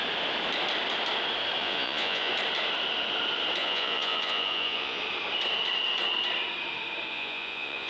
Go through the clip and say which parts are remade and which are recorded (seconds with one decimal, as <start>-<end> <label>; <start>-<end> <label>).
0.0-1.6 recorded; 1.6-2.3 remade; 2.3-3.6 recorded; 3.6-5.0 remade; 5.0-7.1 recorded; 7.1-7.9 remade